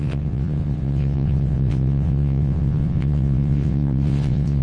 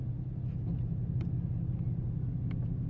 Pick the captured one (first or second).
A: second